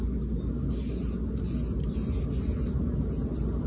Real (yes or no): yes